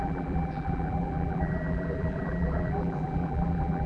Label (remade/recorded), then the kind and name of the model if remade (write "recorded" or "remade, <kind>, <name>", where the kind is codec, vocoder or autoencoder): remade, vocoder, BigVGAN v2